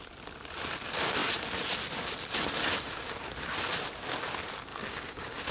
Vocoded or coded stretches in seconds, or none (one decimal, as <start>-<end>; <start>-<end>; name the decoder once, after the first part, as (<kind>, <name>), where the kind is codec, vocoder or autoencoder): 4.7-5.5 (codec, DAC)